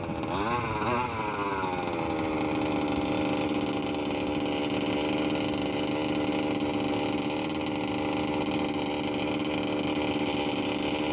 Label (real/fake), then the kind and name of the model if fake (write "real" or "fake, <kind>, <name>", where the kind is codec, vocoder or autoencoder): real